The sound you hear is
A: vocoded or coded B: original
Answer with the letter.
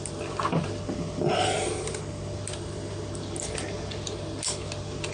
B